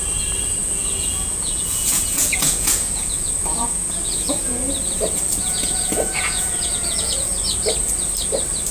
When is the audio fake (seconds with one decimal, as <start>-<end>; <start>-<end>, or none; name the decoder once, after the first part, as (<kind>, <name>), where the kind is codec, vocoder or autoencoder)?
0.6-4.7 (vocoder, Vocos); 5.3-7.3